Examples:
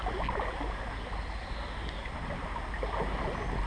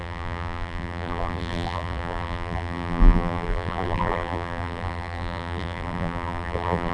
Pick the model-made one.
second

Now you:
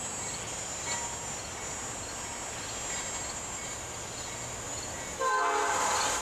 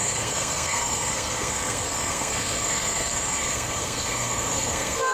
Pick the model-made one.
second